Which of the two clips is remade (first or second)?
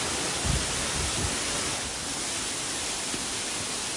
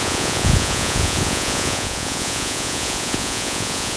second